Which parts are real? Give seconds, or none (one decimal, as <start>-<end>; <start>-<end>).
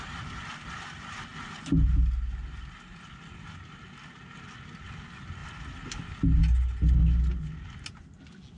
0.0-8.6